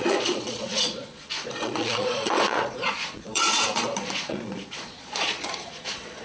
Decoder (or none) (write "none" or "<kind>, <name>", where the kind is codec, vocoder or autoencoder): vocoder, Vocos